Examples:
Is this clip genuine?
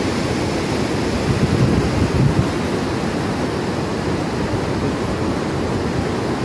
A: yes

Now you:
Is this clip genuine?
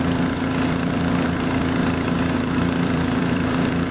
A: no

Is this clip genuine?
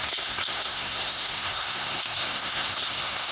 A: no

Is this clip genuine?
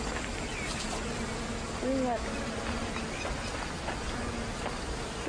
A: yes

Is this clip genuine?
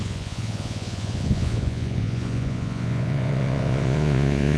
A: no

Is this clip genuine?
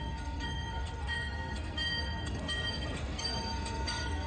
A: no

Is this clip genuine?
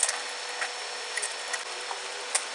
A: yes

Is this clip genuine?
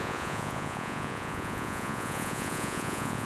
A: no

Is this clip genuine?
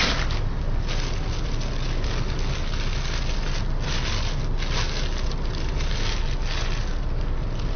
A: yes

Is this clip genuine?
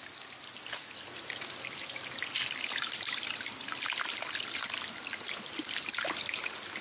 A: yes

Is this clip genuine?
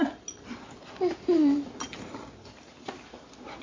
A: yes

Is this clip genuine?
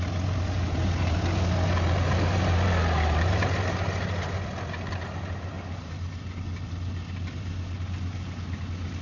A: yes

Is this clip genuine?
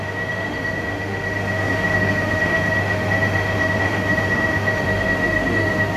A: no